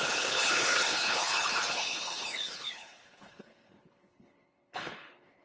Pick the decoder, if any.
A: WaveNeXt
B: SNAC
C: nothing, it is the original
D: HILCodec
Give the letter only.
D